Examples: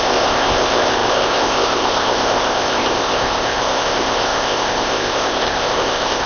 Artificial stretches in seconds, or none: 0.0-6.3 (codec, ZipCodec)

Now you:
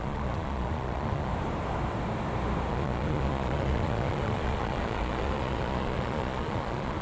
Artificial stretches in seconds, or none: 0.0-1.3 (vocoder, Vocos); 2.7-7.0

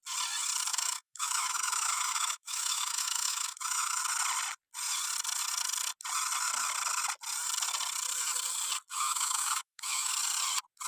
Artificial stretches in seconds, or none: 0.7-4.0 (autoencoder, DAC-VAE); 8.9-10.1

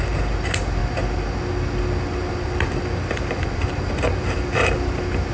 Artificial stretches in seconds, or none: 0.0-0.8 (vocoder, BigVGAN v2); 2.3-5.3

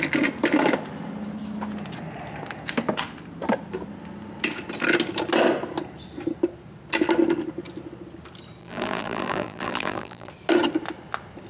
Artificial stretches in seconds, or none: 8.6-10.3 (vocoder, BigVGAN v2)

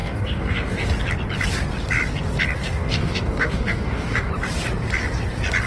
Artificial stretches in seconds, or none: 0.0-0.9 (codec, DAC); 2.6-4.3

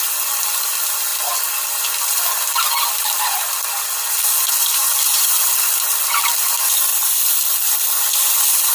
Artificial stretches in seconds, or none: 0.0-1.1 (vocoder, BigVGAN v2); 2.0-2.5; 5.3-6.9; 8.1-8.7